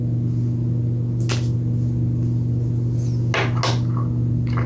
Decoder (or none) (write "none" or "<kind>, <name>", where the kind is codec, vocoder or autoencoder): none